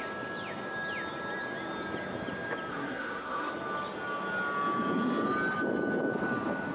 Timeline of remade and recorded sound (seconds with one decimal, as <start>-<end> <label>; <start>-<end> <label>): 0.0-2.7 recorded; 2.7-3.5 remade; 3.5-6.7 recorded